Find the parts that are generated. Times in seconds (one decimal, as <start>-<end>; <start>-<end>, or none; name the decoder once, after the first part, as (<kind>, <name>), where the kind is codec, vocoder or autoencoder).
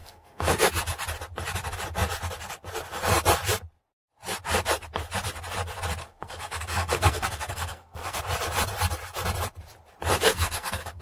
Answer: 0.0-0.7 (codec, SNAC); 6.0-8.2; 10.2-11.0